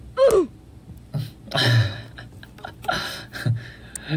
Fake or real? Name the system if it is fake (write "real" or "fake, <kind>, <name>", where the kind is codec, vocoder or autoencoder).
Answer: real